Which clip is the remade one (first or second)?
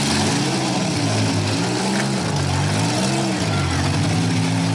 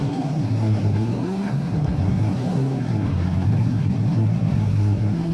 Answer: second